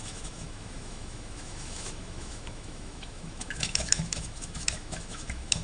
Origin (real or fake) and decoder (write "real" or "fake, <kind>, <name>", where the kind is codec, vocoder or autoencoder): fake, autoencoder, DAC-VAE